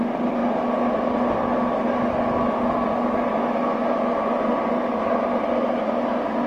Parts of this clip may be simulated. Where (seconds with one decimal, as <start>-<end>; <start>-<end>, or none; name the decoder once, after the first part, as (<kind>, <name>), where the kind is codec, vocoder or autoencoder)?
none